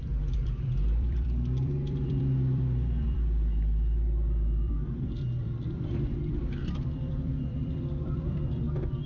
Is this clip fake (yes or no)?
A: yes